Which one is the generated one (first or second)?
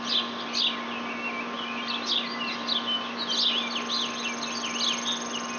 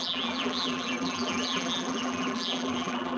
second